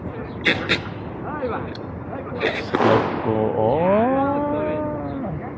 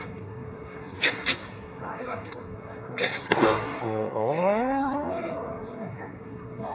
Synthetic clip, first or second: second